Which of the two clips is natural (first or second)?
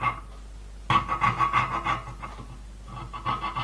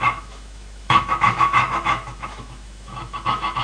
first